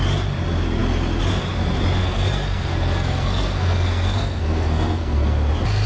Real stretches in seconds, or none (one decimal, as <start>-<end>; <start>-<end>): 0.0-2.0; 5.5-5.9